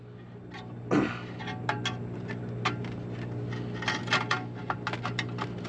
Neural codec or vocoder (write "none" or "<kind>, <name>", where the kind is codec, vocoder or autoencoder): none